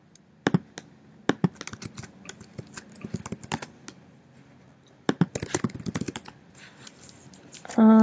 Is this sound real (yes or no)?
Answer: yes